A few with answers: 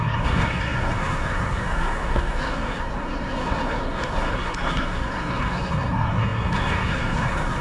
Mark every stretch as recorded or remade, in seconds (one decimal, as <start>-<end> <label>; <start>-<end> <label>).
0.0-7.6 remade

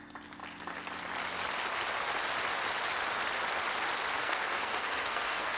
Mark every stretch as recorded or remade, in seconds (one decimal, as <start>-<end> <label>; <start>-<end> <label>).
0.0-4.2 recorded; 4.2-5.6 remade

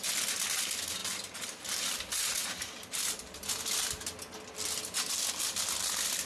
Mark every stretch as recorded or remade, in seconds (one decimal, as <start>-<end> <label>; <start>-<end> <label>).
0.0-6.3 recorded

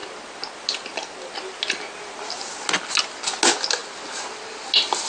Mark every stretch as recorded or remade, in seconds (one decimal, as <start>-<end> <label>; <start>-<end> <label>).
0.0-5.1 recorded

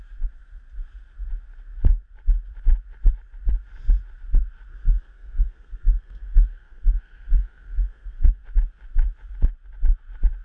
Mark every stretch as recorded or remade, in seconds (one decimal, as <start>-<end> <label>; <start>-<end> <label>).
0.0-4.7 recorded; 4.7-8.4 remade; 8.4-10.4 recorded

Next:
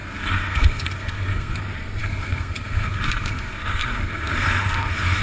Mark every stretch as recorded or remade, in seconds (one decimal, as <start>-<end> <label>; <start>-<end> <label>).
0.0-1.6 remade; 1.6-2.0 recorded; 2.0-5.2 remade

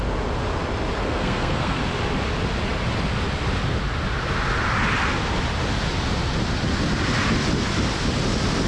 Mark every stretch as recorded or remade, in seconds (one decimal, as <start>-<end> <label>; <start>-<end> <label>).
0.0-1.0 recorded; 1.0-1.8 remade; 1.8-8.7 recorded

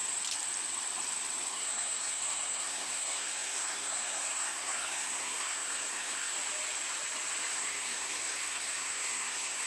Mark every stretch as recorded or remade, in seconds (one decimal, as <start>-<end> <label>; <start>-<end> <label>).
0.0-1.5 recorded; 1.5-6.3 remade; 6.3-7.5 recorded; 7.5-9.7 remade